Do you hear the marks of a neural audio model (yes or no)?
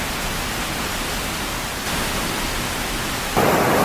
no